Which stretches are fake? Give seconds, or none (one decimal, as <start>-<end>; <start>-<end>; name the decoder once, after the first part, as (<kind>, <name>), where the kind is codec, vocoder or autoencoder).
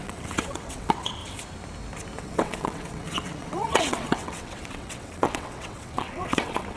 0.0-1.2 (vocoder, WaveNeXt); 2.2-6.8